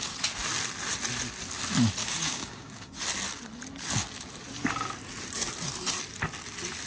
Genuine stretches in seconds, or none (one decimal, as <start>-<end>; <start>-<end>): 0.0-2.0; 3.0-6.9